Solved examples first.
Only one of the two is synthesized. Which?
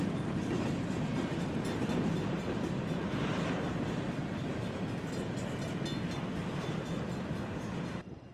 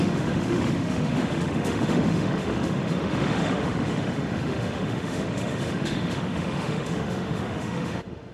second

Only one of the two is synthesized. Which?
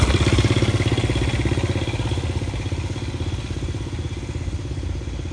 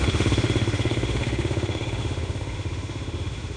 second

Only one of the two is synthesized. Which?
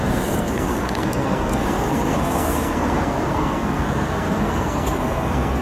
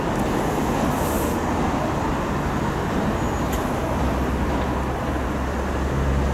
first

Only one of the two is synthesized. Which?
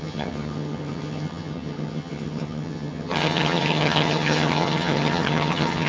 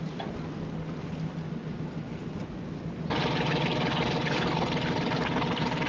first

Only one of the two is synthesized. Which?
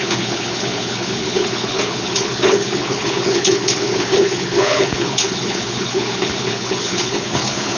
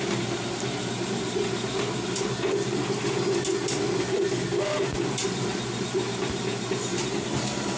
first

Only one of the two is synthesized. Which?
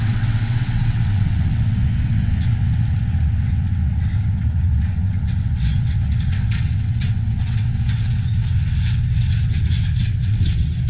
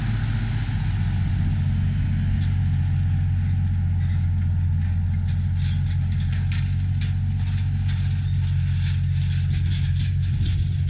first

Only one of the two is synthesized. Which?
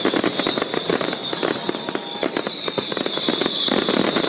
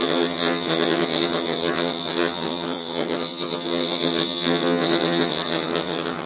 second